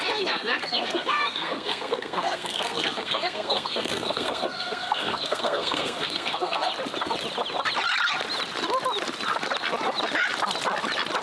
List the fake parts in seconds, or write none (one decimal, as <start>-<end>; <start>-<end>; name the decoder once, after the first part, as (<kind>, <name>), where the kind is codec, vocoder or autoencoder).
0.0-6.7 (codec, SNAC)